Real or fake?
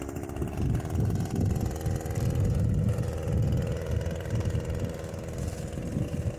real